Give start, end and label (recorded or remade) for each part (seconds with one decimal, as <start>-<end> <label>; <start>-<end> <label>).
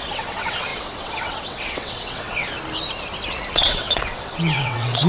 0.0-2.4 remade; 2.4-3.5 recorded; 3.5-5.1 remade